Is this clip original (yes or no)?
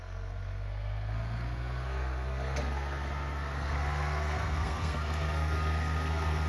no